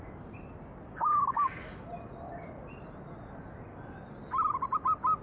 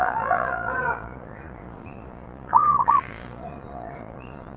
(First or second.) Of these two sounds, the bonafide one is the first